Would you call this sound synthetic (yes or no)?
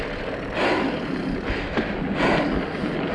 no